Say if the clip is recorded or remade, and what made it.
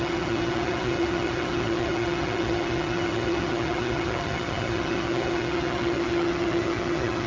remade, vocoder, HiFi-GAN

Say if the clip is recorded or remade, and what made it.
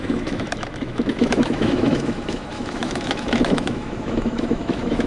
remade, autoencoder, DAC-VAE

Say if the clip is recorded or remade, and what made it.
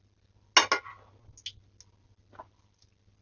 recorded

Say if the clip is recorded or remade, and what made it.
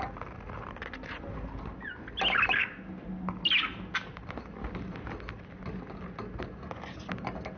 recorded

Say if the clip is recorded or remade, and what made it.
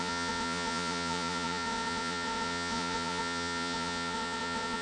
remade, vocoder, Vocos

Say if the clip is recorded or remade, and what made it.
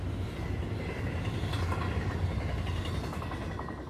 recorded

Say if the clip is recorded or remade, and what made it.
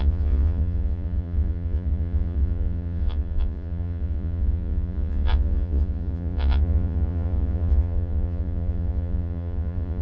remade, vocoder, Vocos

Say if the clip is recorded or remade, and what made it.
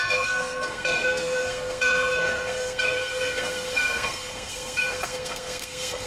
remade, codec, SNAC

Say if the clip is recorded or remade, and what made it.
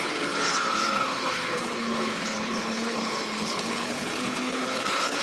remade, codec, HILCodec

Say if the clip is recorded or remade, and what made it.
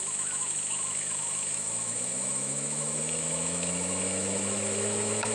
remade, autoencoder, DAC-VAE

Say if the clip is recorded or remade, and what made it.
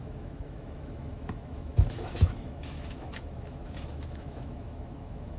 remade, autoencoder, DAC-VAE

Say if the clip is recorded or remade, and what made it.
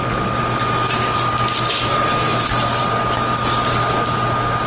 recorded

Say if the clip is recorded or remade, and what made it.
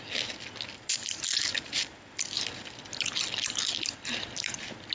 recorded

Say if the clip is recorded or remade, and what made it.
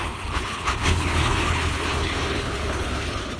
remade, codec, HILCodec